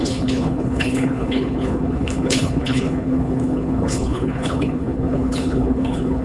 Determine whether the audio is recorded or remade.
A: remade